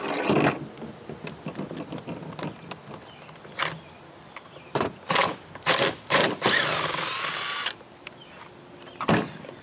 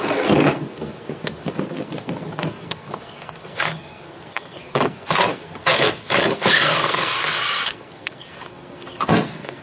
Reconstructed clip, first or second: second